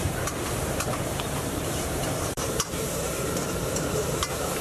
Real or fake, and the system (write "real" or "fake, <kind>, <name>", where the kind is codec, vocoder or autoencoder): fake, vocoder, BigVGAN v2